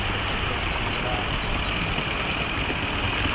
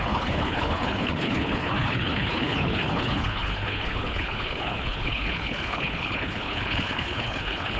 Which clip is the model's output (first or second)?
second